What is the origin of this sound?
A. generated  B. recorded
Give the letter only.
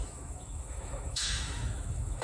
A